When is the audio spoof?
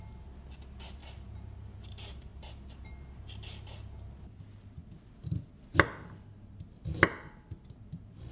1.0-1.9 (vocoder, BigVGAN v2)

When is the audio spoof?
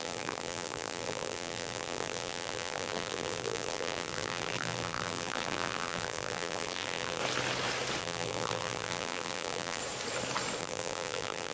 0.0-7.2 (vocoder, BigVGAN v2); 8.0-9.8; 10.6-11.5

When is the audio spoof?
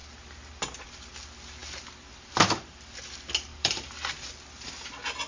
3.5-4.3 (vocoder, BigVGAN v2)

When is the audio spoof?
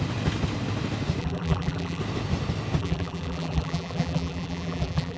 1.2-2.0 (vocoder, BigVGAN v2); 2.8-5.2